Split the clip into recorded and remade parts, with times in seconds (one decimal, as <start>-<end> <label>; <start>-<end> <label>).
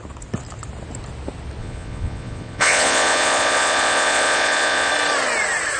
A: 0.0-1.6 recorded; 1.6-4.9 remade; 4.9-5.8 recorded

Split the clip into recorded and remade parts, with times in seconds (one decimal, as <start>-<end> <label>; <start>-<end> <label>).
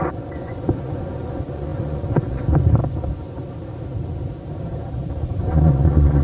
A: 0.0-2.8 remade; 2.8-5.1 recorded; 5.1-6.2 remade